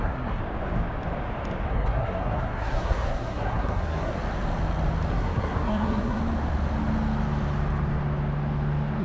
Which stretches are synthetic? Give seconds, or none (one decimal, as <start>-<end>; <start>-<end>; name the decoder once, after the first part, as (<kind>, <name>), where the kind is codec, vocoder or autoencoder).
0.0-0.4 (codec, SNAC); 1.7-4.1; 5.1-6.2